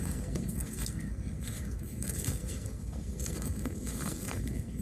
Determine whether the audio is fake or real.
fake